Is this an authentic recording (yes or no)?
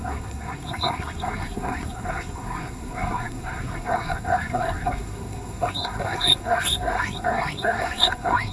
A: no